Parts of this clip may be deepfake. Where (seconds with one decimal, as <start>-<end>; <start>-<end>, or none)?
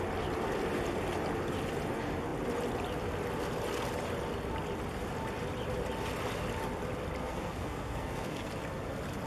7.2-8.5